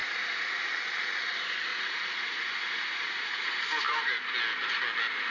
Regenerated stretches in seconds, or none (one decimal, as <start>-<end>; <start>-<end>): 0.0-0.7; 1.7-3.6